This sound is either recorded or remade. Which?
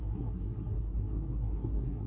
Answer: remade